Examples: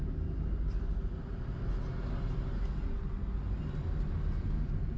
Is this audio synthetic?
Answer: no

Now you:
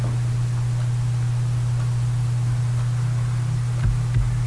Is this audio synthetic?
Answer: no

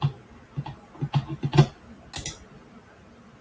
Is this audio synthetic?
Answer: no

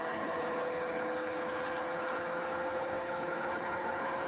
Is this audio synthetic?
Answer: yes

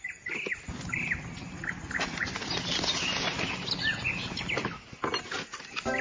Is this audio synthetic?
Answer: no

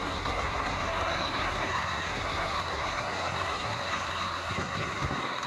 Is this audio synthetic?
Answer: yes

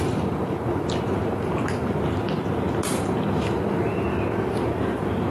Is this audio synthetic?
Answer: no